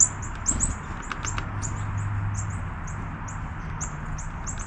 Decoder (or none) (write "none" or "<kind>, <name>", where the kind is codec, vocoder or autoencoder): none